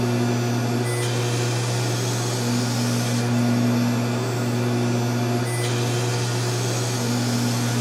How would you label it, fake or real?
real